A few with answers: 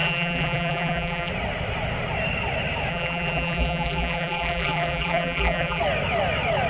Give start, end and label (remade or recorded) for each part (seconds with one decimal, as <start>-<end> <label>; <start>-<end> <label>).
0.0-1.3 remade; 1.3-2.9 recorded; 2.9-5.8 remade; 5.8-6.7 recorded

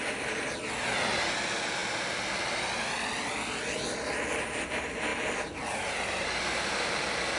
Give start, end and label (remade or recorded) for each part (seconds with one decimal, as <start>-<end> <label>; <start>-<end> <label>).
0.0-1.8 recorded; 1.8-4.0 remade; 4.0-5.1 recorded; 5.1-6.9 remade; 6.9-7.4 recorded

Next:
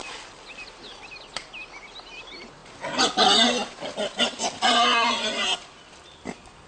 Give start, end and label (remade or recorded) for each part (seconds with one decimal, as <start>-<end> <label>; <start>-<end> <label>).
0.0-6.7 recorded